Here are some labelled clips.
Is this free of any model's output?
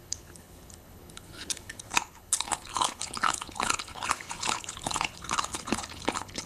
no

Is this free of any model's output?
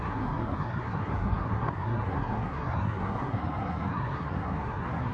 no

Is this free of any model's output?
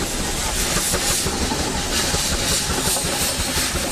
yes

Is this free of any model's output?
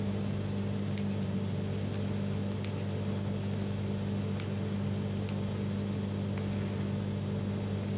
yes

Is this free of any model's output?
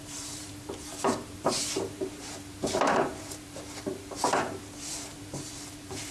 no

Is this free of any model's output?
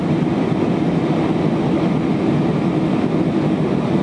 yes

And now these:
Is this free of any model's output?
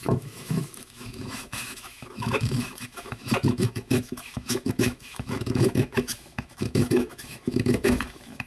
no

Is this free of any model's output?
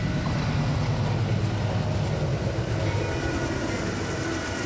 yes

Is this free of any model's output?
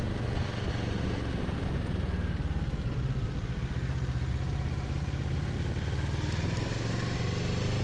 yes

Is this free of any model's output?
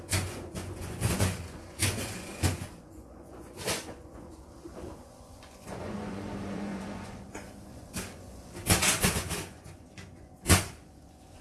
no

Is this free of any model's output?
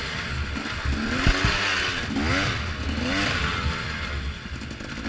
yes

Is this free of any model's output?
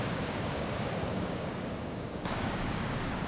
no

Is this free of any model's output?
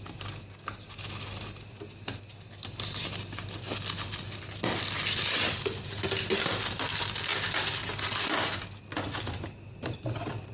yes